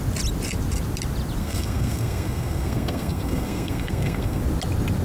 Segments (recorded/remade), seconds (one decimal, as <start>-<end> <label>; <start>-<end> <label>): 0.0-1.4 recorded; 1.4-4.4 remade; 4.4-5.0 recorded